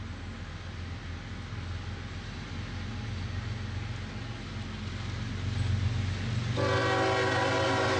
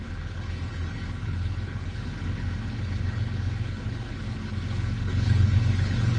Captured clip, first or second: first